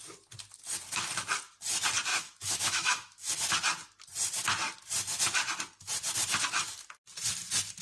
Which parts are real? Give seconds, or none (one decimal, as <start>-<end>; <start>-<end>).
0.0-2.1; 3.3-7.8